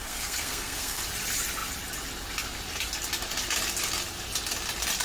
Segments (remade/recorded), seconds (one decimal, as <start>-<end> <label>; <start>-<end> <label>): 0.0-1.0 remade; 1.0-5.0 recorded